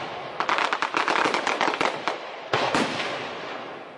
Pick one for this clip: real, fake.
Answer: real